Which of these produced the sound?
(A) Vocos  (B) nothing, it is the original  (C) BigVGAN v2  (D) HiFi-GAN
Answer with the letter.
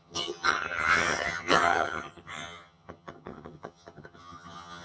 D